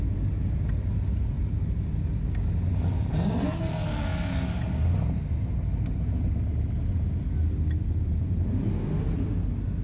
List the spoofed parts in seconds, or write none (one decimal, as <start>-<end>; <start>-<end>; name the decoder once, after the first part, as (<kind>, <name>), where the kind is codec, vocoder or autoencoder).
none